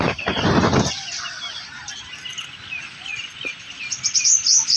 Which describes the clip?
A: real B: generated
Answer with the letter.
A